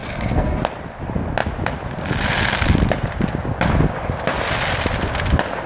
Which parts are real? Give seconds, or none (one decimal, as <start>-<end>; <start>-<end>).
0.6-5.7